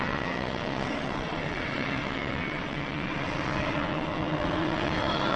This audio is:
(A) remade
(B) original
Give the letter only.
A